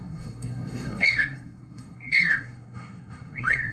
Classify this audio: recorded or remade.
remade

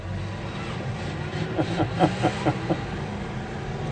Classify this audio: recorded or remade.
recorded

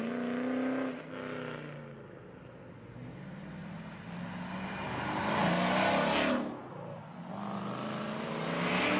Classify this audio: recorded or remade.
recorded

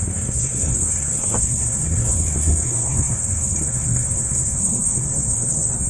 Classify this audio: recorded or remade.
remade